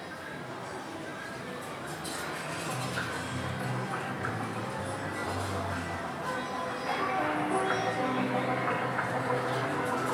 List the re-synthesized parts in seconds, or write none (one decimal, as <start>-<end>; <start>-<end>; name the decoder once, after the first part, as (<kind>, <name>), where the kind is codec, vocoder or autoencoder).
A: none